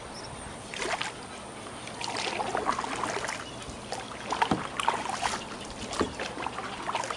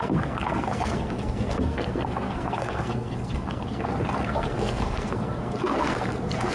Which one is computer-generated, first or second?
second